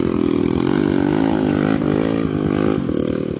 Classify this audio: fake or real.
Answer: real